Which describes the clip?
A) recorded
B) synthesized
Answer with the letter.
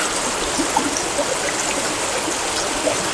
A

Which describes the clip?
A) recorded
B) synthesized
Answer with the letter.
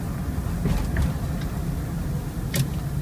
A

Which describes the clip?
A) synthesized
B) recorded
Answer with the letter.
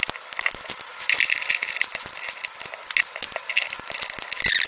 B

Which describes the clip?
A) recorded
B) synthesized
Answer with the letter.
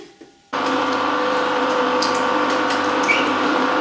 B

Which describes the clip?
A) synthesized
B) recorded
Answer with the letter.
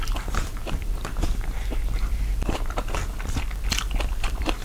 A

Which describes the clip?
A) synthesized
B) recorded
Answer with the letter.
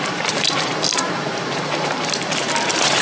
A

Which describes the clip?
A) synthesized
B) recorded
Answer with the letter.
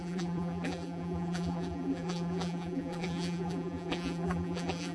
A